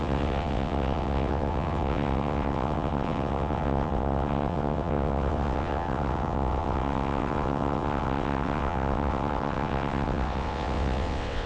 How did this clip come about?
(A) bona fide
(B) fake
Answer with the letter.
B